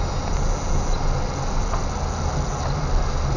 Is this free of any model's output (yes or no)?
yes